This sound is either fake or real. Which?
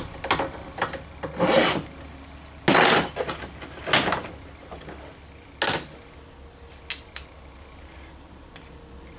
real